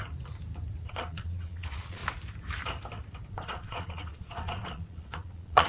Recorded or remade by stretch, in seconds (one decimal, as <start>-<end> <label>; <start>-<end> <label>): 0.0-0.9 recorded; 0.9-2.0 remade; 2.0-3.3 recorded; 3.3-5.7 remade